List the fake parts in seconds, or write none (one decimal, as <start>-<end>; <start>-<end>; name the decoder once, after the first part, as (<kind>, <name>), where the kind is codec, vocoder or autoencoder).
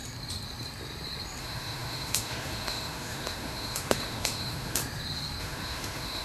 1.4-4.8 (autoencoder, DAC-VAE); 5.4-6.2